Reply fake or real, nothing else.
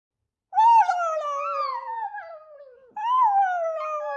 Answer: real